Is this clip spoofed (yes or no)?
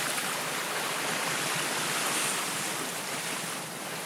no